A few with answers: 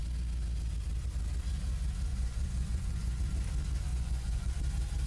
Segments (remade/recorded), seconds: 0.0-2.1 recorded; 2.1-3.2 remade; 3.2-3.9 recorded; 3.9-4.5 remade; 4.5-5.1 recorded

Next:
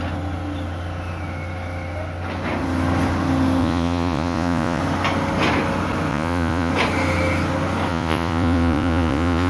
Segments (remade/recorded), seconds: 0.0-3.6 recorded; 3.6-4.8 remade; 4.8-6.1 recorded; 6.1-6.7 remade; 6.7-7.9 recorded; 7.9-9.5 remade

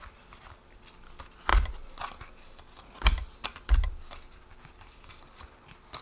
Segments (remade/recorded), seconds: 0.0-6.0 recorded

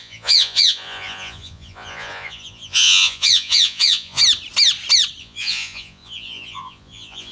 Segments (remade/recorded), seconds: 0.0-4.2 remade; 4.2-5.2 recorded; 5.2-7.3 remade

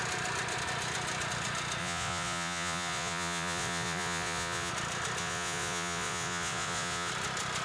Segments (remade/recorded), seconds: 0.0-1.8 recorded; 1.8-4.7 remade; 4.7-5.2 recorded; 5.2-7.1 remade; 7.1-7.6 recorded

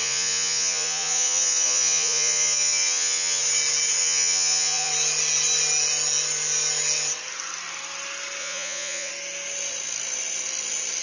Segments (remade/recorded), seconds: 0.0-3.4 remade; 3.4-4.0 recorded; 4.0-4.9 remade; 4.9-8.4 recorded; 8.4-9.1 remade; 9.1-11.0 recorded

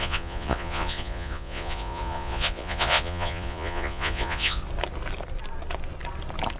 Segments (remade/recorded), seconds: 0.0-4.6 remade; 4.6-6.6 recorded